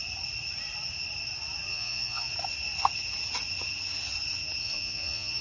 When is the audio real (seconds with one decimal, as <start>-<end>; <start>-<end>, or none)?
0.0-1.7; 2.3-4.6